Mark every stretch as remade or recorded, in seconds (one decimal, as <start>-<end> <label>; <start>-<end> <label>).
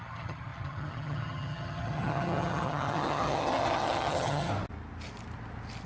0.0-4.5 remade; 4.5-5.9 recorded